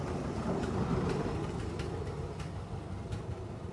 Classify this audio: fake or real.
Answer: real